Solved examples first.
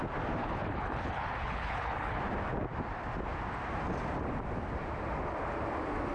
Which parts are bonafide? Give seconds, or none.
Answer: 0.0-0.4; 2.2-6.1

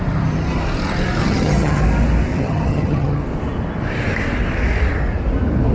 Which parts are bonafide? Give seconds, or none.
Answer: 0.0-1.2; 1.8-2.3; 3.2-5.7